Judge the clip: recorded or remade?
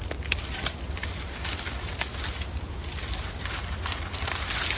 recorded